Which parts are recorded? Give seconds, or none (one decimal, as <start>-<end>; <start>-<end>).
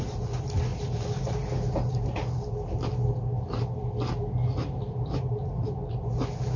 none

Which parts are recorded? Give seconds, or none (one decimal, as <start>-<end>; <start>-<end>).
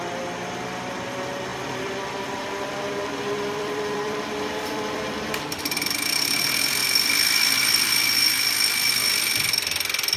0.0-1.5; 5.6-6.8; 8.9-10.2